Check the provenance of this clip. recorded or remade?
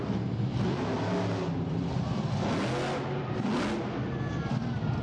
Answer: recorded